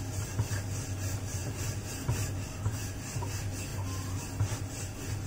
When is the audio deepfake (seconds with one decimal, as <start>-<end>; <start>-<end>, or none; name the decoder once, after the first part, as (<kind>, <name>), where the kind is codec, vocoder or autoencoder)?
none